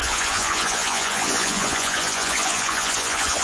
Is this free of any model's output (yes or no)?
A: no